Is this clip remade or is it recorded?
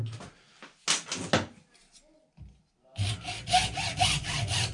recorded